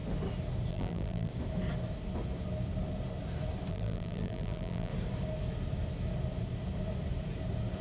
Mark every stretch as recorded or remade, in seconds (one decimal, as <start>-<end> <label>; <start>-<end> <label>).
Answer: 0.0-0.7 recorded; 0.7-1.3 remade; 1.3-3.7 recorded; 3.7-4.9 remade; 4.9-7.8 recorded